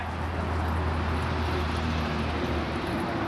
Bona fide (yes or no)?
yes